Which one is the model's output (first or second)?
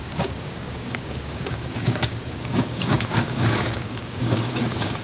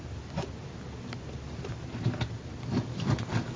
first